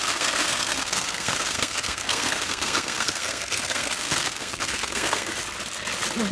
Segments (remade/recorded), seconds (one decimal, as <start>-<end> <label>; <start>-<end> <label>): 0.0-5.3 remade; 5.3-6.3 recorded